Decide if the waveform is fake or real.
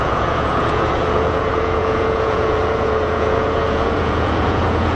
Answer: fake